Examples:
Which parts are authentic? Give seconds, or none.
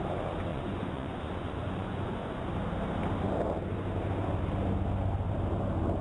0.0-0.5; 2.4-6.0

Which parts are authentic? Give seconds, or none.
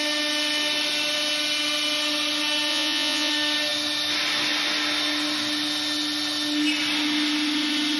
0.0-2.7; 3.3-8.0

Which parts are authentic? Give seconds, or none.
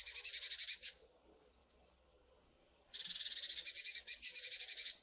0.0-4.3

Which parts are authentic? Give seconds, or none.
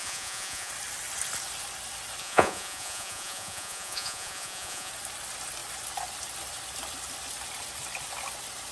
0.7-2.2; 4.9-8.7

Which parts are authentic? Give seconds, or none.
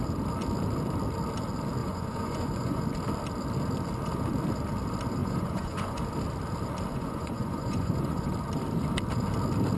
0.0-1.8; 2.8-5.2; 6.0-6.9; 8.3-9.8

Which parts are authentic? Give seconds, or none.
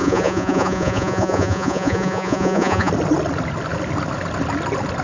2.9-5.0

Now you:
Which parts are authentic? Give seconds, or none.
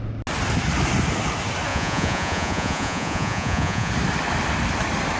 0.0-1.7; 3.9-5.2